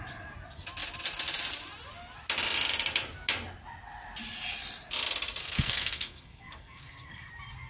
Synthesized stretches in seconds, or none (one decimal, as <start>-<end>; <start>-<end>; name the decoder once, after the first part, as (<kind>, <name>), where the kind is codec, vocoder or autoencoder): 5.4-7.3 (codec, SNAC)